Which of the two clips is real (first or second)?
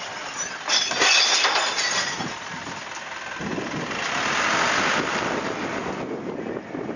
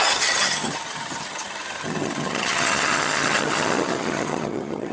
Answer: first